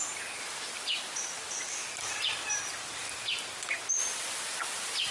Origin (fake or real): real